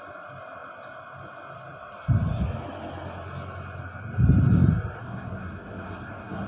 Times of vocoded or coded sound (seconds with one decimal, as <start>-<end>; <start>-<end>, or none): 5.0-6.5